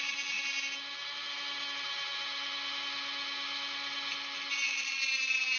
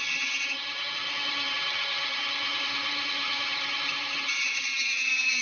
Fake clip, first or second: second